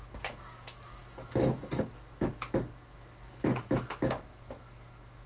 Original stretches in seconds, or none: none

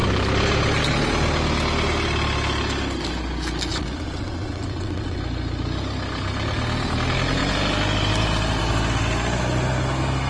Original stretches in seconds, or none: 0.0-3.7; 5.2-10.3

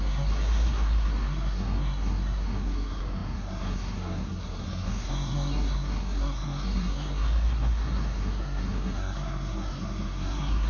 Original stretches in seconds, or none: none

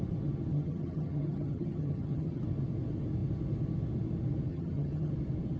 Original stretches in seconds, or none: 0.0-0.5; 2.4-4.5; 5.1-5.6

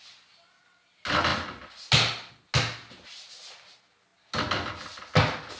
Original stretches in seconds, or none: 0.0-5.6

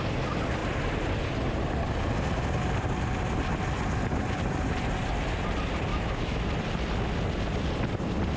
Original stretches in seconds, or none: 0.0-5.9; 6.5-8.4

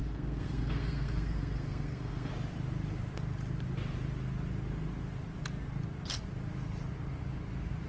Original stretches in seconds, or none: 2.3-7.9

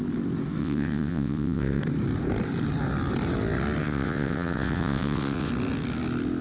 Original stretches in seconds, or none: 0.0-0.6; 1.8-3.8; 5.5-6.4